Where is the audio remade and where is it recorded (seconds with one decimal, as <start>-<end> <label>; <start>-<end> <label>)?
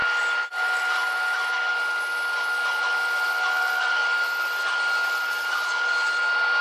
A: 0.0-6.6 recorded